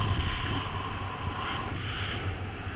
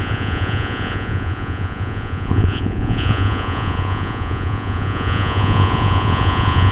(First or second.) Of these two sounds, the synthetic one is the second